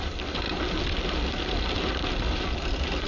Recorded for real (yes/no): yes